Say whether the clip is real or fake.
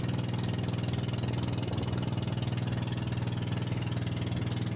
real